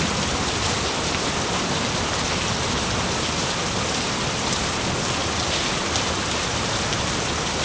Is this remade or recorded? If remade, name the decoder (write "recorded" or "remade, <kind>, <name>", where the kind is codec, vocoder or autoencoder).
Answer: remade, vocoder, BigVGAN v2